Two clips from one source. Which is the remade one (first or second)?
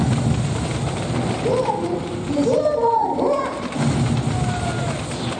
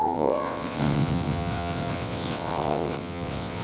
second